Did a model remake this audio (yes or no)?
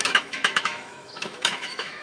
yes